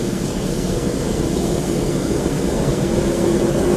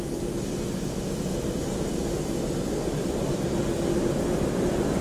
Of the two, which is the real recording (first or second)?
second